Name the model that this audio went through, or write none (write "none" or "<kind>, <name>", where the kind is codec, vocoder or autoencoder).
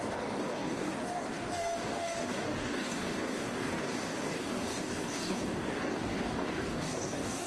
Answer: codec, DAC